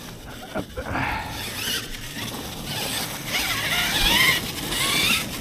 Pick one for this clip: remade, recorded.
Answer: recorded